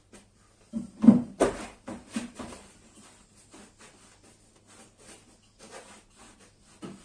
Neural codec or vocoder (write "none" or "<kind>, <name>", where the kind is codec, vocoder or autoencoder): none